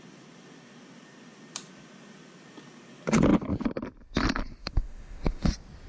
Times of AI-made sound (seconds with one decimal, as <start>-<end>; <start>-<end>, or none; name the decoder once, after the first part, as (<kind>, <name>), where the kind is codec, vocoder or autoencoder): 4.6-5.5 (autoencoder, DAC-VAE)